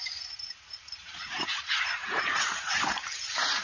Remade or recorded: remade